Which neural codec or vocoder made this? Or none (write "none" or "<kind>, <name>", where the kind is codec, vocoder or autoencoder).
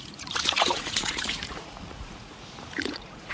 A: vocoder, Vocos